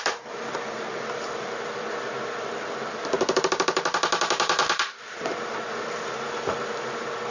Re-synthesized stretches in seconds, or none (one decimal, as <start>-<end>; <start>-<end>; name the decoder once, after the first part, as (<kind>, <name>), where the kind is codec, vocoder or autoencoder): 0.0-7.3 (vocoder, BigVGAN v2)